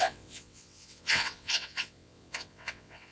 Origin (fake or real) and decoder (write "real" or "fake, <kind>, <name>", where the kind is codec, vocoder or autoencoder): fake, vocoder, WaveNeXt